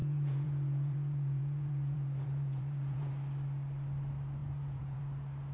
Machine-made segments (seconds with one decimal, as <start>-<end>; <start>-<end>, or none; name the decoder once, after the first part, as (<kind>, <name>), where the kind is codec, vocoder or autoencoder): 0.0-3.1 (vocoder, Vocos); 4.4-5.0